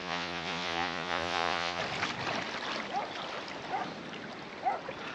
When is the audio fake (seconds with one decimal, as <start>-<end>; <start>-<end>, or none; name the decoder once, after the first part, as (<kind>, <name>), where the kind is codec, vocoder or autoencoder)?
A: 0.0-1.8 (vocoder, Vocos)